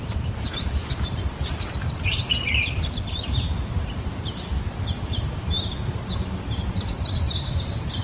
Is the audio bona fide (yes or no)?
no